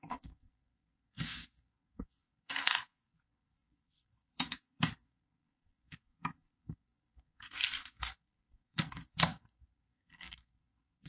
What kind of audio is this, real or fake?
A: fake